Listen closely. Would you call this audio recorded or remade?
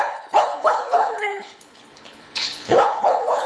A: remade